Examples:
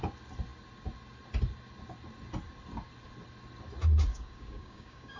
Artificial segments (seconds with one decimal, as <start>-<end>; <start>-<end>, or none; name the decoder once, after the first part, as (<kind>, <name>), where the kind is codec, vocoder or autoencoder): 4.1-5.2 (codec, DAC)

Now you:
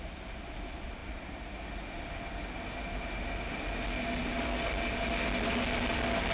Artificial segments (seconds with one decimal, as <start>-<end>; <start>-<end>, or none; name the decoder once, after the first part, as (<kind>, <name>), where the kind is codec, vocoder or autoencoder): none

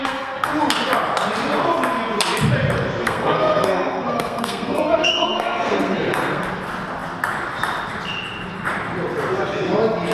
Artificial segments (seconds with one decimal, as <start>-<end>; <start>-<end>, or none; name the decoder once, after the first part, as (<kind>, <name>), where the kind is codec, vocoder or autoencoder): 0.0-0.5 (codec, SNAC); 3.0-6.4

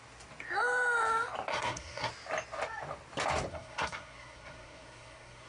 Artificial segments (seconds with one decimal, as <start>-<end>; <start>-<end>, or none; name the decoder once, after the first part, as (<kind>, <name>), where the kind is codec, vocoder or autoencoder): 1.5-2.1 (codec, SNAC); 3.5-5.5

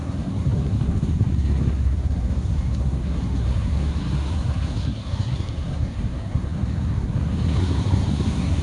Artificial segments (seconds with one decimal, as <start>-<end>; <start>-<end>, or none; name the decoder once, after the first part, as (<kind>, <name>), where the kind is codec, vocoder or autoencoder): 0.0-8.6 (codec, SNAC)